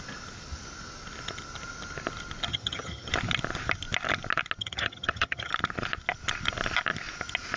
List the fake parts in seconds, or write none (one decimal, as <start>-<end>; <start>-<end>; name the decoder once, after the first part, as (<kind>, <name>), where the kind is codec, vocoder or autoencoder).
2.5-3.1 (vocoder, HiFi-GAN); 4.6-5.5